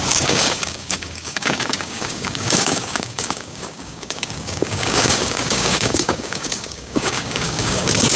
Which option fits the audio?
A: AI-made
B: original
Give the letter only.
A